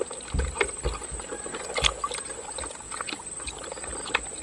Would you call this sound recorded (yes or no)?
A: yes